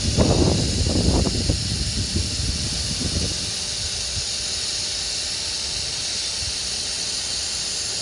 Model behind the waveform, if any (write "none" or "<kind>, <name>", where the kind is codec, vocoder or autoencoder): none